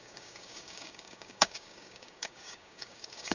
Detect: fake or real fake